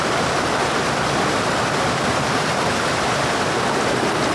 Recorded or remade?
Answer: recorded